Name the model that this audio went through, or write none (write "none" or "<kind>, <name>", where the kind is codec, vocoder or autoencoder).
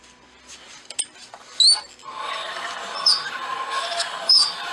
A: none